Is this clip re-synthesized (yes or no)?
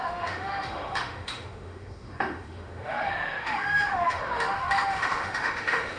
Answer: yes